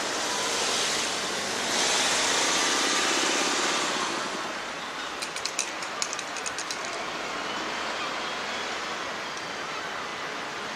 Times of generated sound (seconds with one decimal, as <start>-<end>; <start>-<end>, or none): none